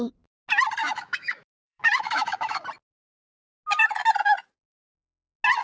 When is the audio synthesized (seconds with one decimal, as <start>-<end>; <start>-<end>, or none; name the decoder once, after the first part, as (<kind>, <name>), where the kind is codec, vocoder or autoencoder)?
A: 0.8-2.6 (autoencoder, DAC-VAE)